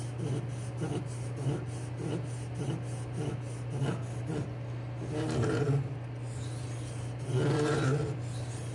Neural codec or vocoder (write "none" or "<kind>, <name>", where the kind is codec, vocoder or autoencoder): none